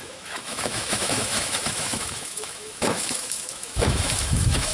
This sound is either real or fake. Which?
fake